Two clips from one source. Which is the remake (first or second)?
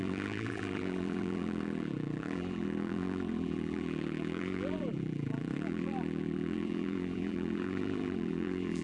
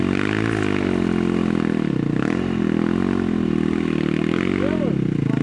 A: first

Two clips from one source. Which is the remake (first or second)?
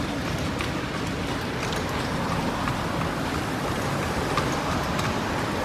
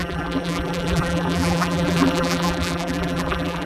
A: second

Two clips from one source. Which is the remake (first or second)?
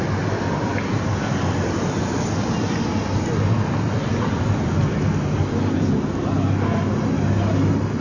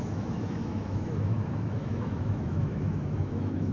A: second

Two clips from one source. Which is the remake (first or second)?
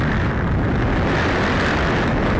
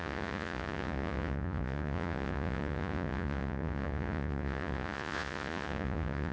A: second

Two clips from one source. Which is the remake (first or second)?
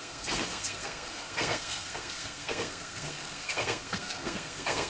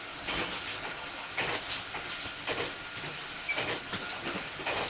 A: first